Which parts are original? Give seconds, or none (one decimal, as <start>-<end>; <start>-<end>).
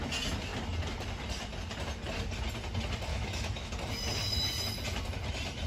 0.0-3.1; 3.7-5.7